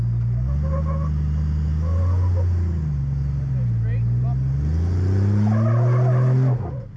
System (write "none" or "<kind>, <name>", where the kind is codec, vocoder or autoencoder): none